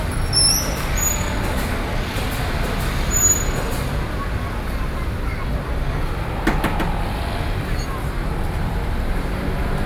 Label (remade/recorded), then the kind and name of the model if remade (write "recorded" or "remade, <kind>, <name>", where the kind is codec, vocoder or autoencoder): recorded